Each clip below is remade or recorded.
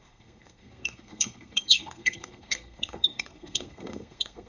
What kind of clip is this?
remade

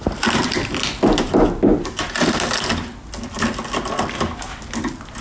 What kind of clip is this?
recorded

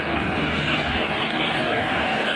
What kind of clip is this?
remade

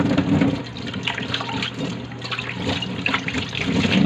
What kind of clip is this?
recorded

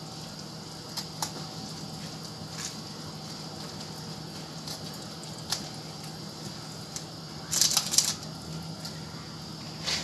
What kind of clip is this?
recorded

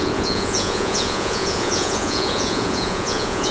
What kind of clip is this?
remade